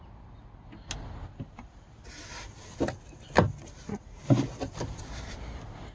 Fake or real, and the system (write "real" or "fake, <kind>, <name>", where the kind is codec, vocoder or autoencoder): real